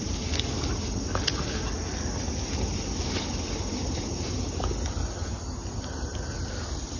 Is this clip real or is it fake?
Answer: real